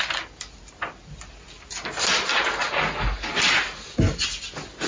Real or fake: real